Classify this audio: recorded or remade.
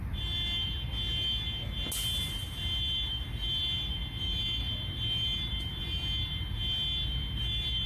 recorded